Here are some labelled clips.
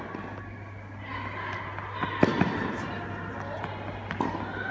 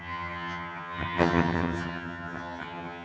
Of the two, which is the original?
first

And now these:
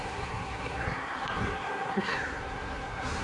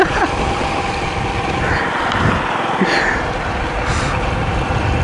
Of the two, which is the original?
second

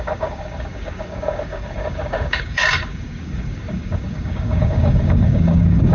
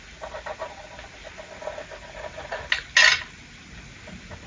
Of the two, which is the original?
second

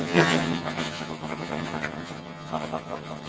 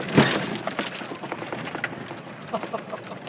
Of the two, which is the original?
second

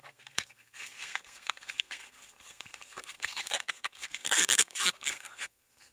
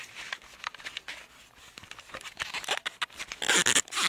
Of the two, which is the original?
second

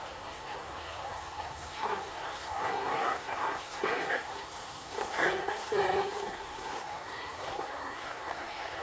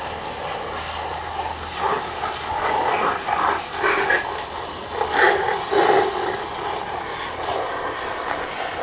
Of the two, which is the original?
second